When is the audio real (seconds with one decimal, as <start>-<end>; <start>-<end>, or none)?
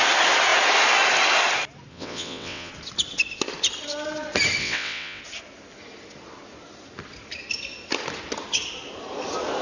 0.0-1.9; 2.7-4.6; 5.2-9.6